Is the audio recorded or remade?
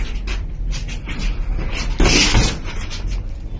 recorded